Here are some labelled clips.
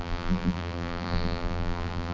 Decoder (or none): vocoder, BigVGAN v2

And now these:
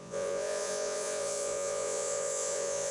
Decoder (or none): vocoder, Vocos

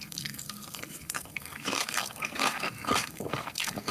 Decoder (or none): codec, SNAC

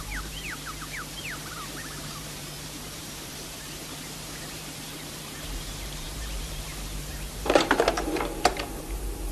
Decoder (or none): vocoder, BigVGAN v2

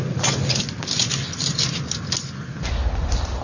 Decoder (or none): none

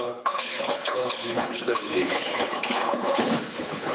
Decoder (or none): codec, HILCodec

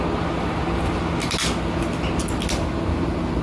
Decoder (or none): none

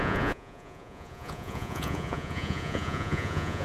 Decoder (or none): vocoder, Vocos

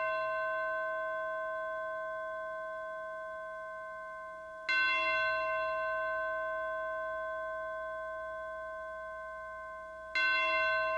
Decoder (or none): none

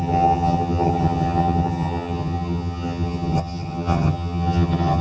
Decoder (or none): vocoder, HiFi-GAN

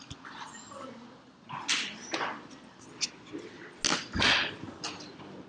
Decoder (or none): none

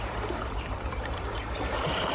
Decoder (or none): vocoder, BigVGAN v2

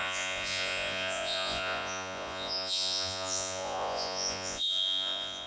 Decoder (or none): vocoder, Vocos